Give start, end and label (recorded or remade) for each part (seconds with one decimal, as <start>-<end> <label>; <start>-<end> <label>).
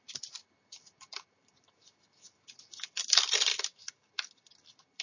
0.0-0.4 remade; 0.4-1.3 recorded; 1.3-5.0 remade